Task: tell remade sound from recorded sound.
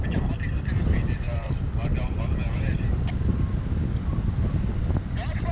recorded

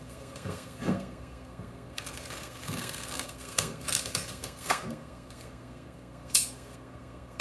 remade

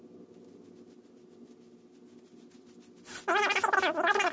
recorded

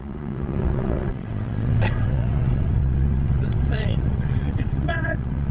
remade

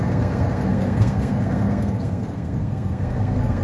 remade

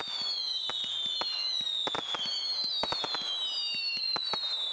recorded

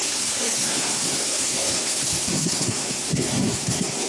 remade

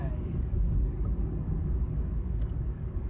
remade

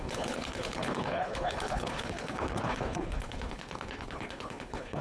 remade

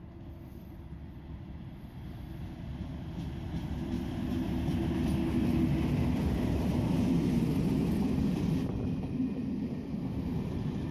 recorded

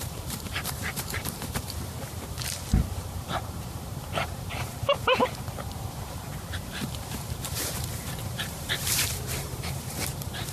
remade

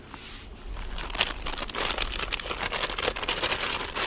recorded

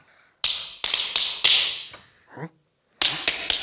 recorded